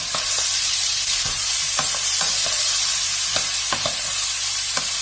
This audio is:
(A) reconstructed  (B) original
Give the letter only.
A